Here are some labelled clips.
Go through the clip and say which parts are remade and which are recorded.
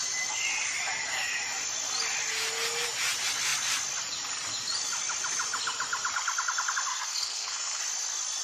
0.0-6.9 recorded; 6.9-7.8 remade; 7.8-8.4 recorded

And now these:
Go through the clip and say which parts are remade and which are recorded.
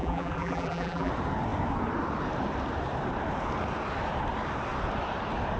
0.0-1.1 remade; 1.1-5.6 recorded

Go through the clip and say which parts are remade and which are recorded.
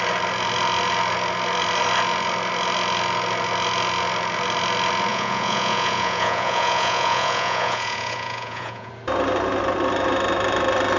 0.0-5.1 recorded; 5.1-8.9 remade; 8.9-11.0 recorded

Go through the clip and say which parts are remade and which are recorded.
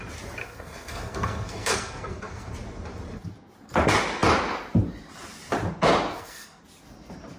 0.0-0.4 recorded; 0.4-2.5 remade; 2.5-6.1 recorded; 6.1-6.6 remade; 6.6-7.4 recorded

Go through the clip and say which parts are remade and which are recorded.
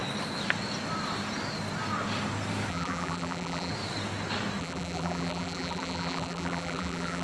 0.0-2.7 recorded; 2.7-3.7 remade; 3.7-4.6 recorded; 4.6-7.2 remade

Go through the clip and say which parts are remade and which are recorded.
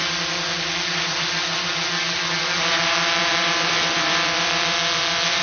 0.0-5.4 remade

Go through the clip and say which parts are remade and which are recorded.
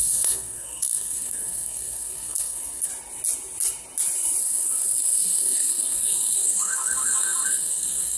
0.0-2.9 remade; 2.9-4.4 recorded; 4.4-8.2 remade